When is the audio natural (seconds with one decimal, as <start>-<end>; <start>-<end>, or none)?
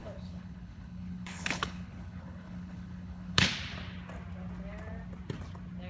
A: 3.5-5.9